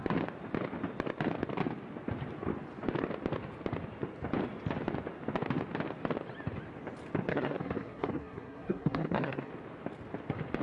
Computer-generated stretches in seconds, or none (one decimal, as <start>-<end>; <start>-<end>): 7.3-9.5